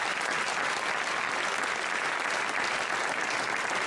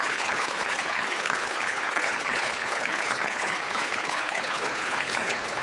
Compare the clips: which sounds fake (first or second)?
second